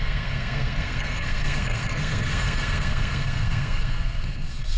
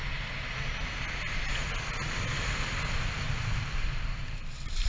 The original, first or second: second